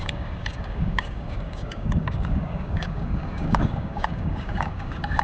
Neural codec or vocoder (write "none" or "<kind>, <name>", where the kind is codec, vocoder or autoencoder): codec, DAC